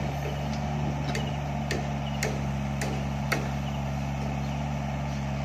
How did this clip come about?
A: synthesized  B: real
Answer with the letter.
B